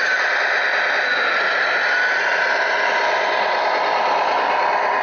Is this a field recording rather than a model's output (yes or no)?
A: yes